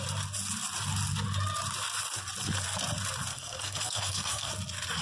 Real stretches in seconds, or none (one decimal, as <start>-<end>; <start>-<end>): 0.0-3.3; 4.5-5.0